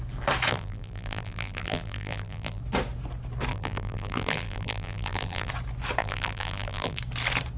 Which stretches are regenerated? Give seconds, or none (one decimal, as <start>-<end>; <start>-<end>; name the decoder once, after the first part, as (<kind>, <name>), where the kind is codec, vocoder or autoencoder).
0.5-2.6 (vocoder, BigVGAN v2); 3.5-5.5; 6.0-7.0